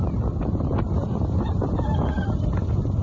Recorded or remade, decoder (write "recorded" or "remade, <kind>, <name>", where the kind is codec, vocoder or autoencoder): remade, vocoder, BigVGAN v2